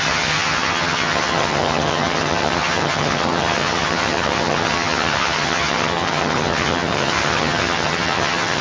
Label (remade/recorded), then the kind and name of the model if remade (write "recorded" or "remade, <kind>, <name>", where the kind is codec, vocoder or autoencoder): remade, vocoder, HiFi-GAN